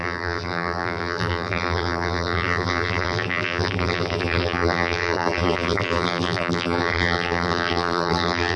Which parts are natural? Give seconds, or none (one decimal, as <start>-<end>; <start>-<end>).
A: none